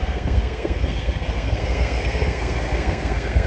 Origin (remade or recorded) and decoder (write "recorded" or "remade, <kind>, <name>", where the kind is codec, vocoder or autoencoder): remade, codec, SNAC